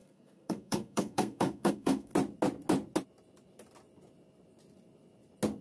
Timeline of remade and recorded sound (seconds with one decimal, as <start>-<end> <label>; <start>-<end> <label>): 0.0-2.1 remade; 2.1-5.6 recorded